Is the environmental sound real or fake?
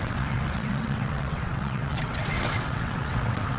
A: fake